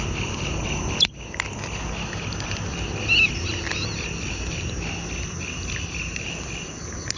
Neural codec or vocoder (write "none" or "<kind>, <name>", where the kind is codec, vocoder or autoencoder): none